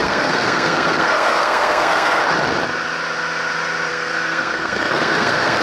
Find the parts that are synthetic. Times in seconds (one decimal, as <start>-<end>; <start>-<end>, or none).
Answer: 0.0-2.3; 3.9-5.6